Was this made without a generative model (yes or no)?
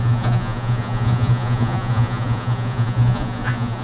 no